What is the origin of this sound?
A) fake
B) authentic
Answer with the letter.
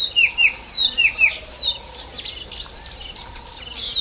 B